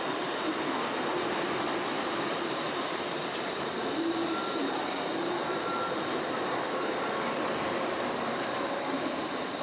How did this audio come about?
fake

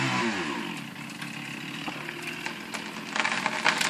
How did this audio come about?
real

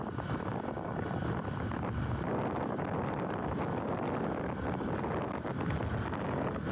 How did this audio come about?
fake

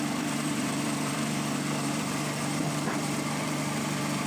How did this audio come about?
fake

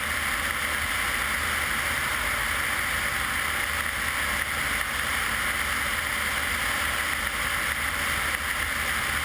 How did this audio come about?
real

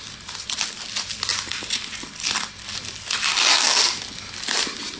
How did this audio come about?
fake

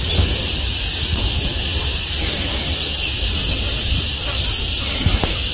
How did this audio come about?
fake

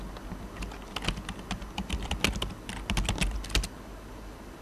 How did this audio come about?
real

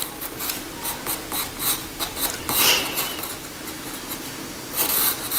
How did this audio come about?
real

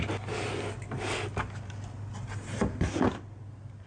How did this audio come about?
real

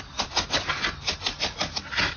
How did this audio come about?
real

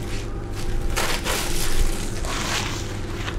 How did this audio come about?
fake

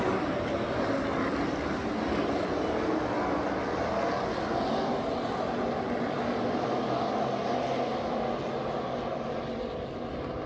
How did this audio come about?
real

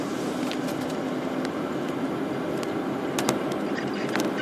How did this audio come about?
real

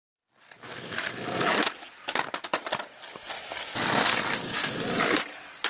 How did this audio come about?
real